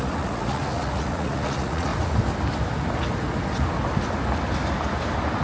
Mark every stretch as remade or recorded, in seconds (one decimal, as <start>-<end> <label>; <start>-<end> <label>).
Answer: 0.0-1.9 remade; 1.9-5.4 recorded